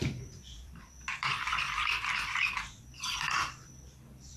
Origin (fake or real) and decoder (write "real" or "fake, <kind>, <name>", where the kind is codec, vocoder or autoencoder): fake, vocoder, BigVGAN v2